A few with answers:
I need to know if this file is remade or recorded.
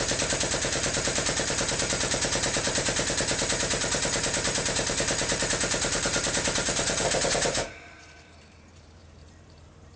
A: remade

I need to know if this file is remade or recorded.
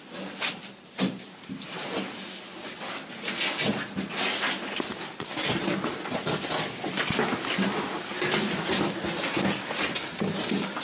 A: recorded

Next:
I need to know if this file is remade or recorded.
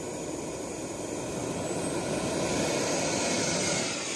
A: recorded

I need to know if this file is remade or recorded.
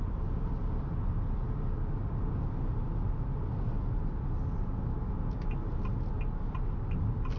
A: recorded